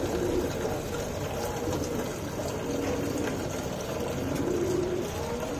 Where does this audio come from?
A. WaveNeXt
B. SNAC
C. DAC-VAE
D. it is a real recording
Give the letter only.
D